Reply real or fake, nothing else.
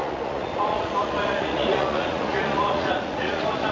fake